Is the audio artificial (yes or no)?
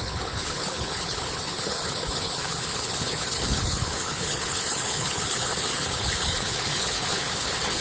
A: yes